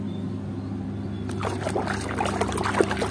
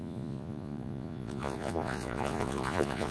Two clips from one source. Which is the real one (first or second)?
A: first